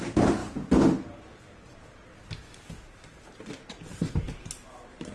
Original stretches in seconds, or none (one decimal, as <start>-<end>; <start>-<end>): none